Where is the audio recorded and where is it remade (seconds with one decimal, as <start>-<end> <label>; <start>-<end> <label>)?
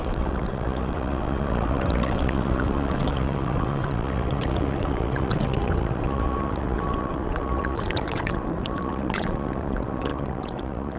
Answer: 0.0-11.0 remade